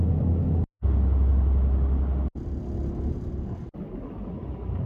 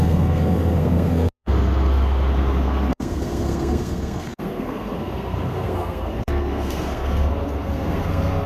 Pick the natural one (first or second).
first